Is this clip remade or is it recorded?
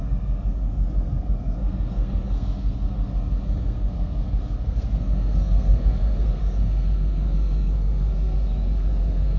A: remade